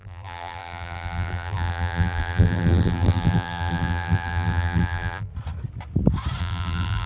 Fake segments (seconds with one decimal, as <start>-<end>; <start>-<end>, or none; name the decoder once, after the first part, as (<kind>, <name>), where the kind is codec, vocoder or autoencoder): 0.0-5.3 (vocoder, BigVGAN v2); 6.4-7.1

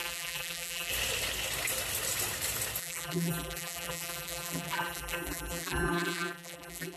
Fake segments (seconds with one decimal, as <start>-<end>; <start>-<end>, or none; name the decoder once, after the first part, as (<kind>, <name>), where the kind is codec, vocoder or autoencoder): 0.0-0.9 (vocoder, BigVGAN v2); 2.8-7.0